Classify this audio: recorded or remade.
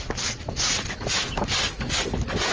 recorded